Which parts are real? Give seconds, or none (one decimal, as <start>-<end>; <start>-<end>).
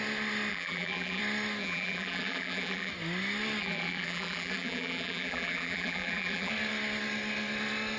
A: 0.0-0.5; 1.2-1.6; 2.9-3.6; 6.5-8.0